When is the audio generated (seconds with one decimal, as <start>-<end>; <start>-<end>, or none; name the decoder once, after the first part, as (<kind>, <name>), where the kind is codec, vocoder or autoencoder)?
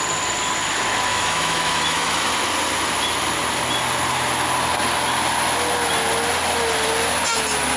1.1-2.3 (autoencoder, DAC-VAE)